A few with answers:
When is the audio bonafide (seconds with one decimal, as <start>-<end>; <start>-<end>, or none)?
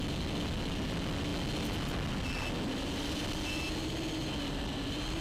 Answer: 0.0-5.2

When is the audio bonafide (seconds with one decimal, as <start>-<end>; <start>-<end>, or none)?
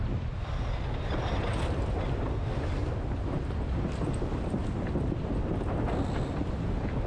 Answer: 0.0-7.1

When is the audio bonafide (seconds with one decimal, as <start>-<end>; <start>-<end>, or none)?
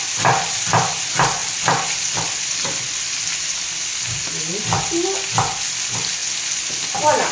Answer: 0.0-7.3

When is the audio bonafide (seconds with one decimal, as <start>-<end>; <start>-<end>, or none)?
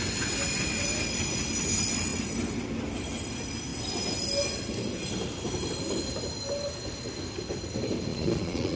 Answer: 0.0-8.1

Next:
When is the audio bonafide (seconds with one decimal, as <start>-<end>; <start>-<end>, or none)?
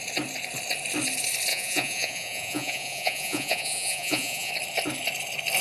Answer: 0.0-1.5; 4.5-5.6